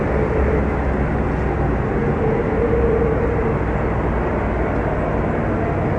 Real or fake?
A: real